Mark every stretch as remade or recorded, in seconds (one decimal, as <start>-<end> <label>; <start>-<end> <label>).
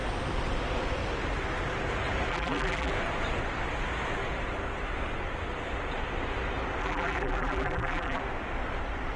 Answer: 0.0-2.3 recorded; 2.3-2.9 remade; 2.9-6.8 recorded; 6.8-8.2 remade; 8.2-9.2 recorded